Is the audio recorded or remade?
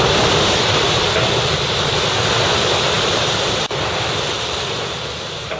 recorded